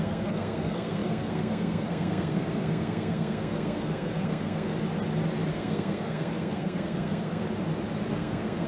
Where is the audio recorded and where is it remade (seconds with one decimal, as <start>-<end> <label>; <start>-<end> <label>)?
0.0-4.7 remade; 4.7-5.5 recorded; 5.5-7.5 remade; 7.5-8.1 recorded; 8.1-8.7 remade